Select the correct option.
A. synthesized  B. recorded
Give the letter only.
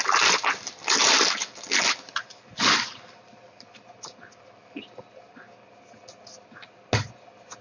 B